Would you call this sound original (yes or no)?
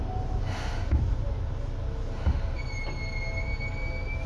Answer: yes